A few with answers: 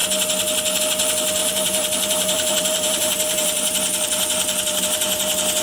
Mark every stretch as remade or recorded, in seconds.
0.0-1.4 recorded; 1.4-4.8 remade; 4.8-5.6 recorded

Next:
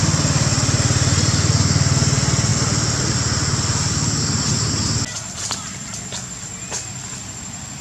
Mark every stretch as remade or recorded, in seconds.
0.0-7.8 recorded

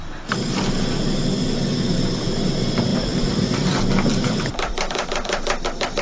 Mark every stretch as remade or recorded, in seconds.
0.0-2.9 recorded; 2.9-3.8 remade; 3.8-4.5 recorded; 4.5-5.1 remade; 5.1-6.0 recorded

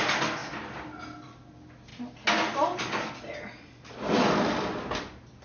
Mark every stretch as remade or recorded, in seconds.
0.0-0.4 recorded; 0.4-1.5 remade; 1.5-5.4 recorded

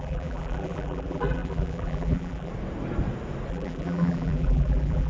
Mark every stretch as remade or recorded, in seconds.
0.0-2.5 remade; 2.5-3.5 recorded; 3.5-5.1 remade

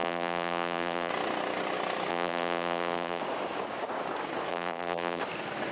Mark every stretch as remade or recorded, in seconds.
0.0-1.1 remade; 1.1-2.1 recorded; 2.1-3.2 remade; 3.2-4.5 recorded; 4.5-5.2 remade; 5.2-5.7 recorded

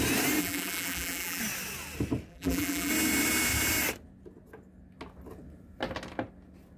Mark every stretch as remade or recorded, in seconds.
0.0-0.4 recorded; 0.4-1.4 remade; 1.4-2.3 recorded; 2.3-2.9 remade; 2.9-6.8 recorded